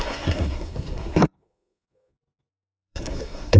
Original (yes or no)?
no